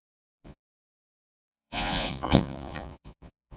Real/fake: fake